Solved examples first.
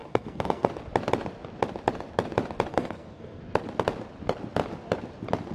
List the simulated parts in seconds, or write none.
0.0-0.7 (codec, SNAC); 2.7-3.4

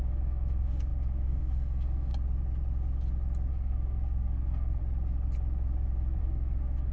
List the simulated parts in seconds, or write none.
0.0-2.1 (codec, SNAC); 3.5-4.8; 6.2-6.9

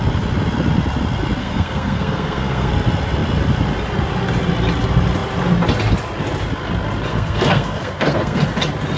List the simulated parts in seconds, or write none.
1.4-2.7 (codec, SNAC); 7.1-8.4

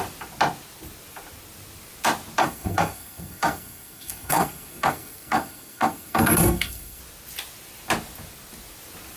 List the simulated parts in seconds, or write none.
2.4-7.0 (codec, SNAC)

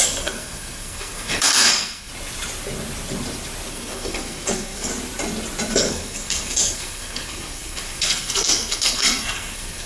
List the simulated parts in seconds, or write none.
0.0-2.1 (codec, SNAC); 3.7-4.9; 5.7-9.9

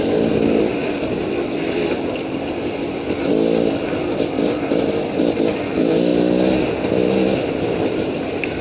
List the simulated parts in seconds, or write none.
none